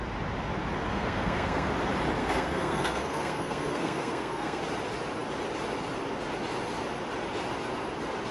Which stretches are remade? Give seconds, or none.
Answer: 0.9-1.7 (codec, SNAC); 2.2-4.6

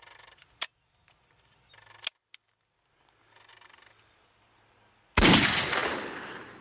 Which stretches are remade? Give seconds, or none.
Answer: none

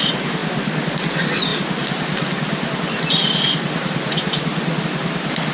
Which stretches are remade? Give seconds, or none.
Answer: 0.0-0.4 (vocoder, BigVGAN v2); 0.9-5.5

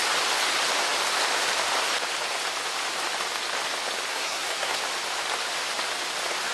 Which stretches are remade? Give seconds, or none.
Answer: 4.1-4.8 (codec, SNAC)

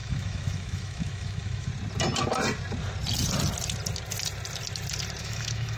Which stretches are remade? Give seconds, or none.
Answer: 0.0-1.7 (autoencoder, DAC-VAE); 5.2-5.8

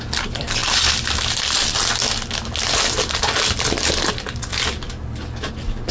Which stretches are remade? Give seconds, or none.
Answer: none

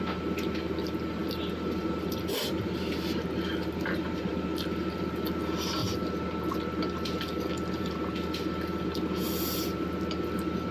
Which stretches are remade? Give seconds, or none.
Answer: 0.0-10.7 (vocoder, BigVGAN v2)